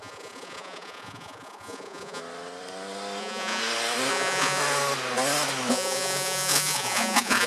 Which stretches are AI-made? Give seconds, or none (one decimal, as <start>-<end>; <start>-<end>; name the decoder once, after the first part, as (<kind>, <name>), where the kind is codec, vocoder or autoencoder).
0.0-2.2 (vocoder, Vocos); 3.2-3.6; 4.1-4.6; 5.7-7.5

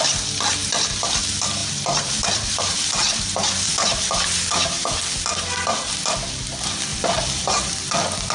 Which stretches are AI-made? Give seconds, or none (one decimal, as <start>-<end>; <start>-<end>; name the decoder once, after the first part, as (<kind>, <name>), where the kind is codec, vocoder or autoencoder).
1.6-4.0 (vocoder, BigVGAN v2); 6.9-8.3

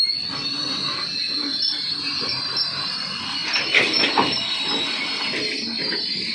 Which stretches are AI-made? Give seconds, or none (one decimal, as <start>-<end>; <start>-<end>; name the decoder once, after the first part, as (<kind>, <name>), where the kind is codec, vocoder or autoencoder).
1.5-2.9 (vocoder, BigVGAN v2)

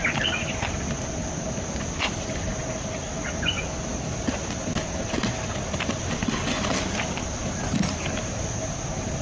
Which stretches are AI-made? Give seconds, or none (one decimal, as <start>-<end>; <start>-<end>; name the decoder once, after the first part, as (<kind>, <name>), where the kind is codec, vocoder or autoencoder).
none

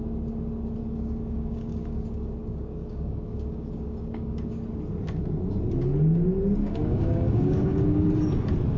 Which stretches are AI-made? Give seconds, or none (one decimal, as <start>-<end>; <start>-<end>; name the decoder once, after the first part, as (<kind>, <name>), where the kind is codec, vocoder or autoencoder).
0.8-4.8 (codec, DAC); 6.6-8.1

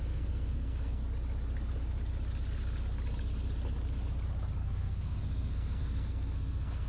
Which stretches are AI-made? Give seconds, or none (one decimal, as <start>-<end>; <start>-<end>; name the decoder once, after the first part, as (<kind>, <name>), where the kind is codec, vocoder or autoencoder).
0.0-1.0 (codec, SNAC); 4.6-6.9

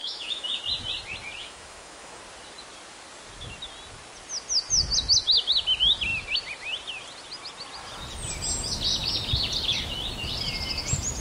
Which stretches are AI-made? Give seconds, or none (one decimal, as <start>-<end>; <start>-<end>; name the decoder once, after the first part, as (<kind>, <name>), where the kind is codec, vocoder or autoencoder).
0.0-0.6 (autoencoder, DAC-VAE); 1.4-2.2

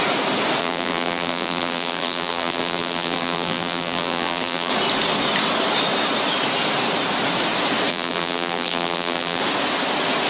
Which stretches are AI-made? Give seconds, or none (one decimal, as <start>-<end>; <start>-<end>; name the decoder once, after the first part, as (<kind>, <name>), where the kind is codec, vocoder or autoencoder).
0.6-4.7 (vocoder, BigVGAN v2); 7.9-9.4